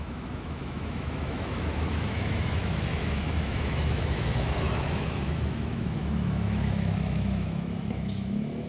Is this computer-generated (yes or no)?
yes